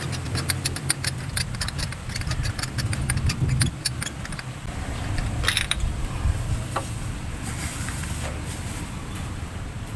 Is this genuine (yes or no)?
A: no